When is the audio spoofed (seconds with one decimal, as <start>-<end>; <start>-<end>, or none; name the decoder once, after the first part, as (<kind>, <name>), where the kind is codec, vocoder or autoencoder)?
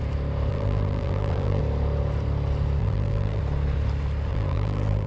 0.5-1.6 (vocoder, BigVGAN v2); 2.8-3.4; 4.3-5.1